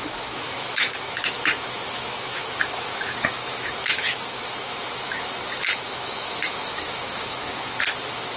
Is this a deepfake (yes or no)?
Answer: yes